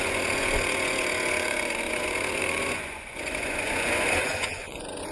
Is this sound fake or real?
fake